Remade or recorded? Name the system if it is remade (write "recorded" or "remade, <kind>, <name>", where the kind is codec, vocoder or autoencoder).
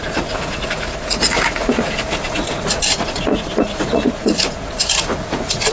remade, vocoder, Vocos